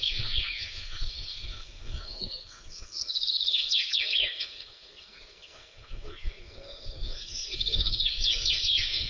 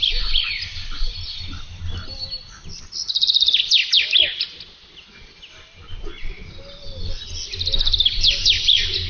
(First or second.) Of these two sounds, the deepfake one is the first